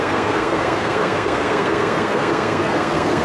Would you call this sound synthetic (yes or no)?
yes